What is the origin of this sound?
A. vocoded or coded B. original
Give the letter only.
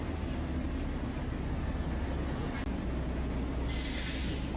B